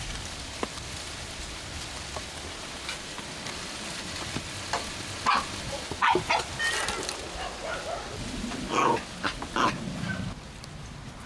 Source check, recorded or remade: recorded